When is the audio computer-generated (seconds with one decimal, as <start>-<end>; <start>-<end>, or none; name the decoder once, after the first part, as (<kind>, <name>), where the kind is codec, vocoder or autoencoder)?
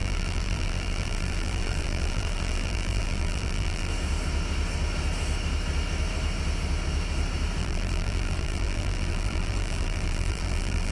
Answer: 0.0-3.9 (vocoder, BigVGAN v2); 7.6-10.9